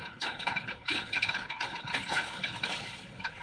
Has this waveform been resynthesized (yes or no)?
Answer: yes